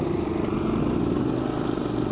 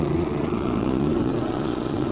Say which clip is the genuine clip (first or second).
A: first